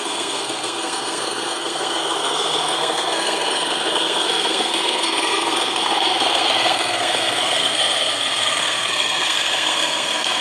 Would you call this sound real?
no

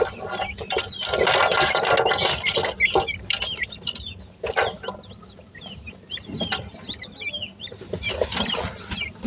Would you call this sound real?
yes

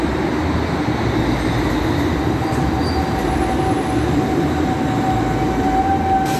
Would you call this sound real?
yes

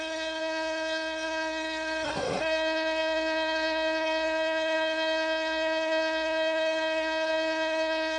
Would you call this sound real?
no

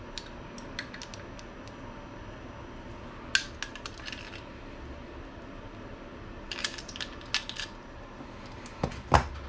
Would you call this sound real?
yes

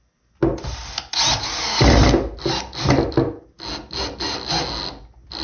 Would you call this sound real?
yes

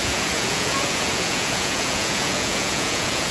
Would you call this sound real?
no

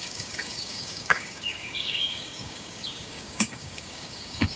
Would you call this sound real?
no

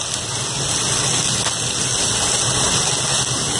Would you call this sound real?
yes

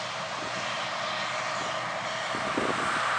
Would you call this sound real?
yes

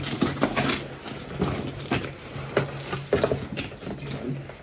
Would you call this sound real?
yes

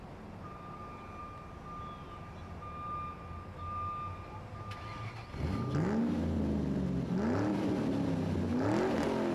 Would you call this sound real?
yes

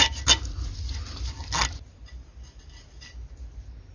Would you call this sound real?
yes